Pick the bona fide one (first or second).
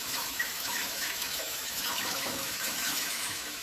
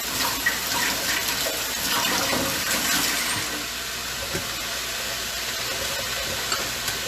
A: second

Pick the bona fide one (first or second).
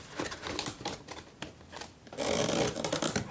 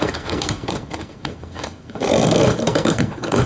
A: first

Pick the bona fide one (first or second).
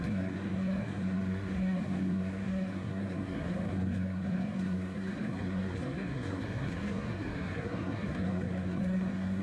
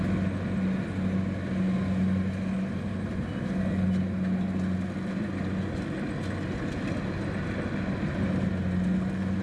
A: second